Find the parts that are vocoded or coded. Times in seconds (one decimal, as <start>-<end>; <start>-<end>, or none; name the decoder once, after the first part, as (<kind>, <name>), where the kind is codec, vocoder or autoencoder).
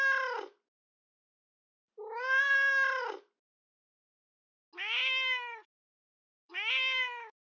5.0-6.7 (autoencoder, DAC-VAE)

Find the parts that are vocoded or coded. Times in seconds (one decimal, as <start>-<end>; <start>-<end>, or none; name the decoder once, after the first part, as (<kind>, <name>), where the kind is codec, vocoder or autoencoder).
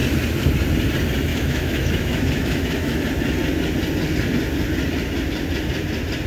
1.3-3.0 (autoencoder, DAC-VAE)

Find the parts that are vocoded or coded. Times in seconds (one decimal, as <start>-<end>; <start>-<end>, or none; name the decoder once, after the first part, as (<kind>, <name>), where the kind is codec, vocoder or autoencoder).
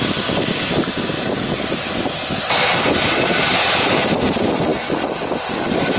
none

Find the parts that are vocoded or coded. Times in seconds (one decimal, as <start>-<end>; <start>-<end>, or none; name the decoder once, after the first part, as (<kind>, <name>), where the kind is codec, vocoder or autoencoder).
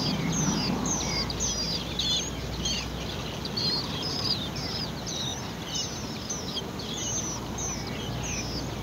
none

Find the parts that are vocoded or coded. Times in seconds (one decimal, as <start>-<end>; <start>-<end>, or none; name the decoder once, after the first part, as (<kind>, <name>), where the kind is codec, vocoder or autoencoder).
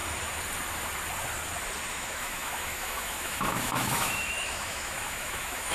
1.9-5.7 (autoencoder, DAC-VAE)